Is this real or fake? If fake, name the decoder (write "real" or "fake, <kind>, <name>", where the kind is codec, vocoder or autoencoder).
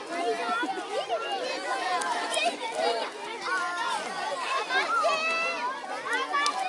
real